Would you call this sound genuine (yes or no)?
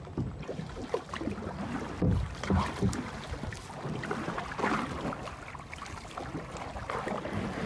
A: yes